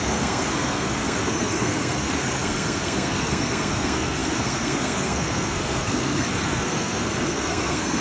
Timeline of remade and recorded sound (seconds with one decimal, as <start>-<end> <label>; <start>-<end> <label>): 0.0-8.0 remade